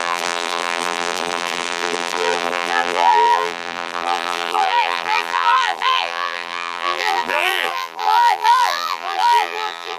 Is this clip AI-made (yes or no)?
yes